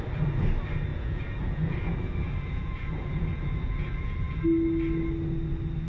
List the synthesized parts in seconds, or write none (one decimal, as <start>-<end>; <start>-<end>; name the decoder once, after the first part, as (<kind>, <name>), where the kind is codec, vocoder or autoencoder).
0.9-4.4 (vocoder, Vocos)